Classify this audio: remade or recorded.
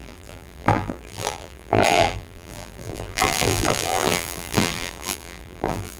remade